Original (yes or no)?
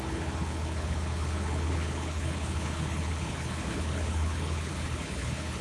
no